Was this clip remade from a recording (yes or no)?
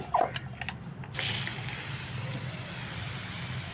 no